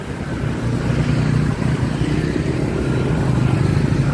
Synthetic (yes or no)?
no